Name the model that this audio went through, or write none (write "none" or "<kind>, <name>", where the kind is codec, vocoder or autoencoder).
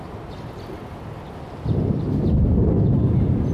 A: none